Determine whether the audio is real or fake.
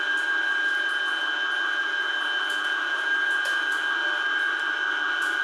real